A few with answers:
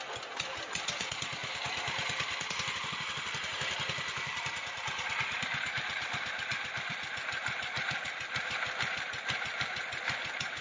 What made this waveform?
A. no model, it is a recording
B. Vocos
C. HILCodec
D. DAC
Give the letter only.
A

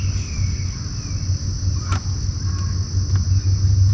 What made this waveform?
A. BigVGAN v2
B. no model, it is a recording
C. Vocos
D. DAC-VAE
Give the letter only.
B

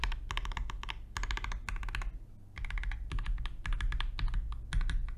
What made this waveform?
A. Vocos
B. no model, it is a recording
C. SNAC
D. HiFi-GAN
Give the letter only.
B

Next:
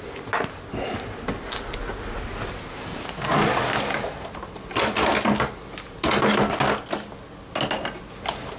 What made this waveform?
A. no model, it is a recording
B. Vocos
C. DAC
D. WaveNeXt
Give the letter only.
A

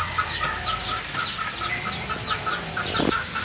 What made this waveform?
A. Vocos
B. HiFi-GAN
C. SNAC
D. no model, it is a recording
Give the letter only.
D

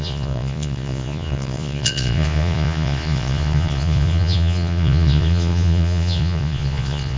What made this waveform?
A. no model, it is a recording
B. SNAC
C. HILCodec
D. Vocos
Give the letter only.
D